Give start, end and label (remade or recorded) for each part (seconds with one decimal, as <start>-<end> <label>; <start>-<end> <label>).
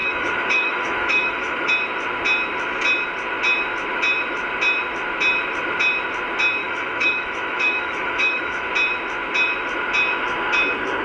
0.0-1.7 remade; 1.7-6.6 recorded; 6.6-8.7 remade; 8.7-11.0 recorded